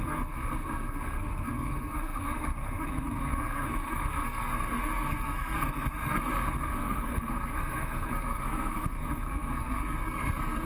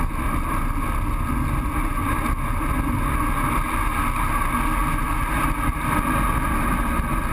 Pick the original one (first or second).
second